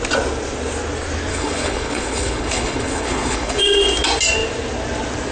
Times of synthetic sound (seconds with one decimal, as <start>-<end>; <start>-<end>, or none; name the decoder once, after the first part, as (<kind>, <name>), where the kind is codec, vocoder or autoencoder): 1.3-3.6 (codec, HILCodec)